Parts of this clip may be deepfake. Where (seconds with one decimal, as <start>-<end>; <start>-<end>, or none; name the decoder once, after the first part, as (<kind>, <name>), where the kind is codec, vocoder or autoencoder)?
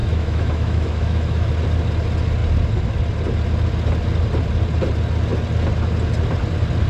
0.0-1.5 (autoencoder, DAC-VAE)